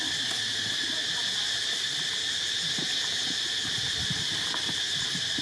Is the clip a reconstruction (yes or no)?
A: no